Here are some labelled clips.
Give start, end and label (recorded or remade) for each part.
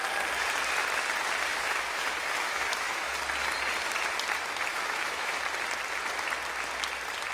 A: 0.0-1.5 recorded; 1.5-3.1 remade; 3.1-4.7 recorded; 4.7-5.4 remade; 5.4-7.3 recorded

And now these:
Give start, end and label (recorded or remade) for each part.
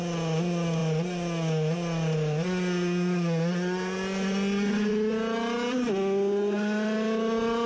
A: 0.0-7.7 recorded